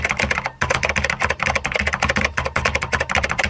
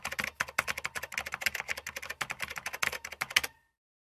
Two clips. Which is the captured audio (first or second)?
second